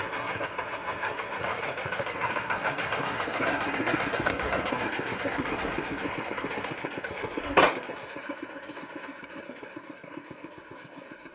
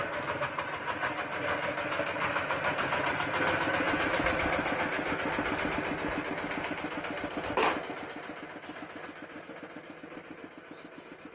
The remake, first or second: first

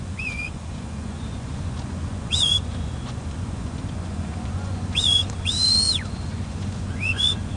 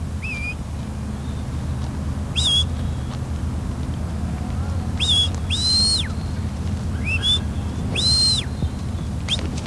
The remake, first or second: first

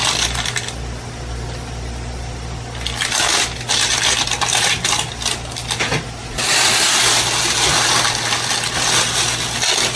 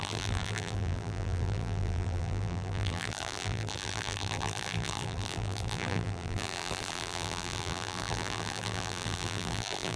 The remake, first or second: second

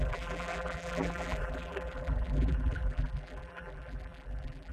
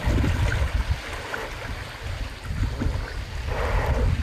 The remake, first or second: first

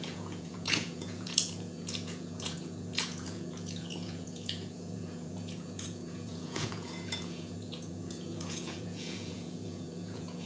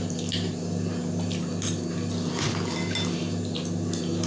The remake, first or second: first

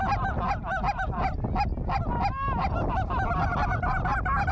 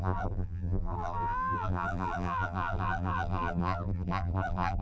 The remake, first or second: second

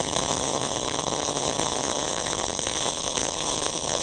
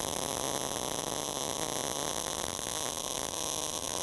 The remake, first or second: first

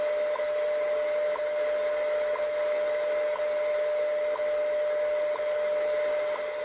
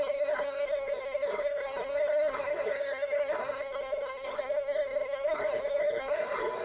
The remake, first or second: second